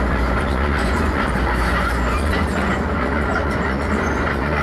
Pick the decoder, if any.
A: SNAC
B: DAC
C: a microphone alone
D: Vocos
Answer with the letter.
D